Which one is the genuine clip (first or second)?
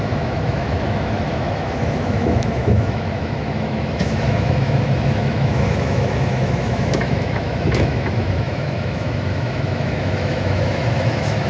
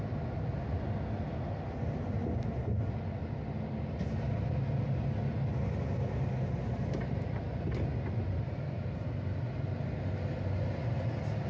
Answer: second